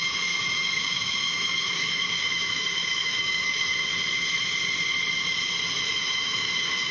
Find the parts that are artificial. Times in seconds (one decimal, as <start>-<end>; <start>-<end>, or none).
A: 0.0-3.9; 5.8-6.9